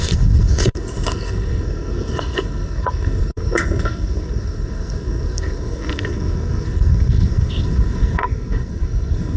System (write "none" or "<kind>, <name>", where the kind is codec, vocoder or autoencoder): codec, SNAC